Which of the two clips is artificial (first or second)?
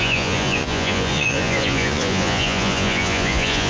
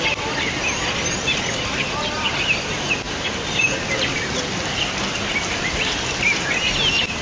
first